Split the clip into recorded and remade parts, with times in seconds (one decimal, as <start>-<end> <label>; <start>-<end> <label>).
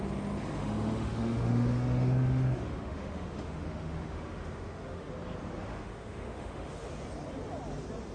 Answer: 0.0-0.6 recorded; 0.6-5.1 remade; 5.1-5.7 recorded; 5.7-6.9 remade; 6.9-8.1 recorded